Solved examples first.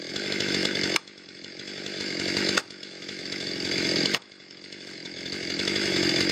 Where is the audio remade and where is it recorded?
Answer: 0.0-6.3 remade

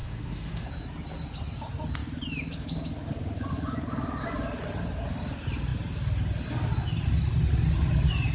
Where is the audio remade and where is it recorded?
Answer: 0.0-0.7 remade; 0.7-8.3 recorded

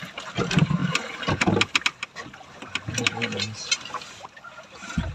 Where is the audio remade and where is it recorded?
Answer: 0.0-5.1 recorded

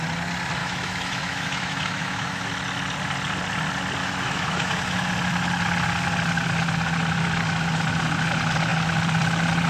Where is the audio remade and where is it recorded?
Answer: 0.0-0.6 recorded; 0.6-2.5 remade; 2.5-4.0 recorded; 4.0-5.1 remade; 5.1-9.7 recorded

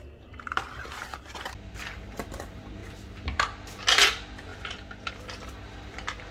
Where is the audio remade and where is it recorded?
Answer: 0.0-6.3 recorded

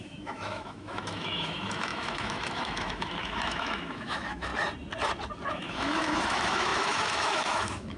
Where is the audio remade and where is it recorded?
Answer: 0.0-4.5 remade; 4.5-5.5 recorded; 5.5-8.0 remade

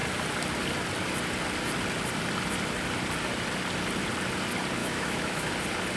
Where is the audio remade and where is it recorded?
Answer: 0.0-4.8 recorded; 4.8-5.5 remade; 5.5-6.0 recorded